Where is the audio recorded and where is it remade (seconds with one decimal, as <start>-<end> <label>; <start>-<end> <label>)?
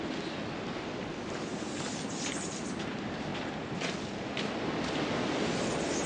0.0-6.1 recorded